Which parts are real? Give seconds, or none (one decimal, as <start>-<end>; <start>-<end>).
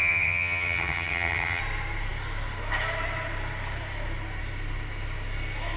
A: 1.6-5.8